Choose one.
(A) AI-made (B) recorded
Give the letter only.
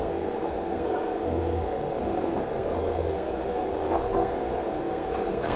A